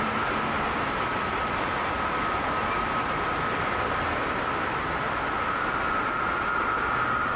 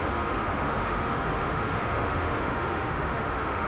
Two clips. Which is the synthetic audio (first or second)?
second